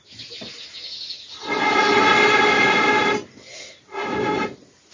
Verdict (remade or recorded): recorded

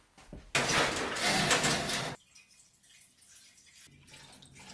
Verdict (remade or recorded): recorded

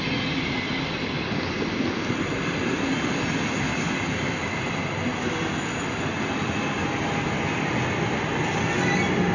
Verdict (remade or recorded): recorded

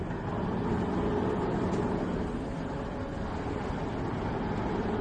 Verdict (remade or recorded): recorded